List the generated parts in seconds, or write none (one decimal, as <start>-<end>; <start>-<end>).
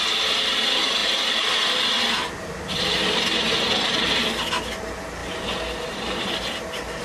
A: none